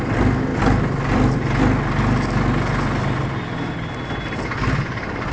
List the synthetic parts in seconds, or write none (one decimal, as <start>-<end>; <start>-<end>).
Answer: none